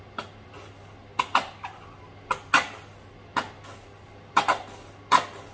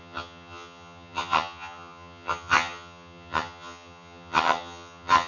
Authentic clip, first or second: first